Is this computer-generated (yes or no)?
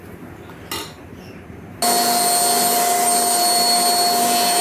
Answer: no